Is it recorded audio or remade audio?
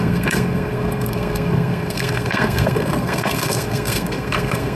remade